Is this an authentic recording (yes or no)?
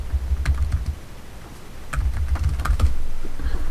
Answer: yes